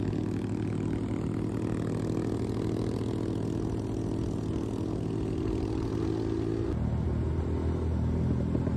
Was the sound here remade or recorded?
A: recorded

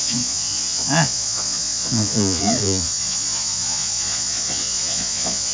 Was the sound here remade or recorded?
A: remade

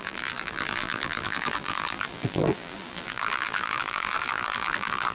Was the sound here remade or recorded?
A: remade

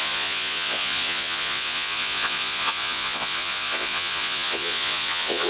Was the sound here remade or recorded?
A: remade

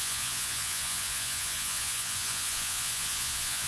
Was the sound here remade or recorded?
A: remade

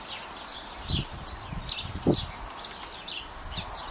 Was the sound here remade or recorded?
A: recorded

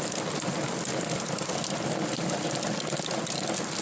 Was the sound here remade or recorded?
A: recorded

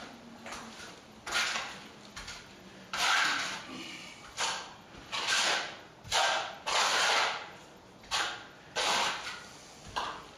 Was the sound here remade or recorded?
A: remade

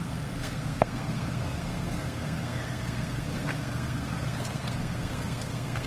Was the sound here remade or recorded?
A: remade